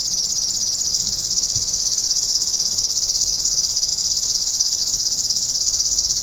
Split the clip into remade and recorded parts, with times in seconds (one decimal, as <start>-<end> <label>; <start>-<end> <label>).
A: 0.0-0.9 recorded; 0.9-6.2 remade